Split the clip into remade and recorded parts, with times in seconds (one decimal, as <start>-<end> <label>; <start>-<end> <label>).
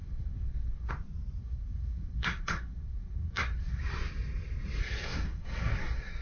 0.0-0.9 remade; 0.9-1.4 recorded; 1.4-3.8 remade; 3.8-4.8 recorded; 4.8-6.2 remade